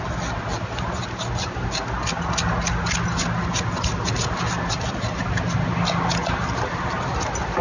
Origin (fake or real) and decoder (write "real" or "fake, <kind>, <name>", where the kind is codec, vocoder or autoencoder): real